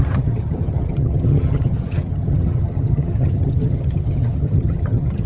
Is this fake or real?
fake